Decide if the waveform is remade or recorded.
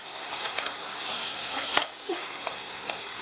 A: remade